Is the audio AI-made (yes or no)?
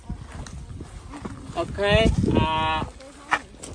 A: no